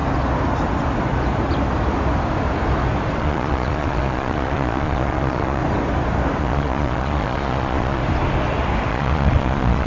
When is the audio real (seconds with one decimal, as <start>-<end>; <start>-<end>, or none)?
0.0-3.2; 5.6-6.4; 8.0-8.9